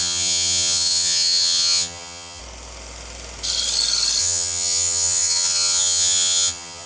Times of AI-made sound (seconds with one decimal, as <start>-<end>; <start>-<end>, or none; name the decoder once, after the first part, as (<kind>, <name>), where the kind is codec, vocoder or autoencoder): 0.0-2.4 (vocoder, HiFi-GAN); 4.2-6.9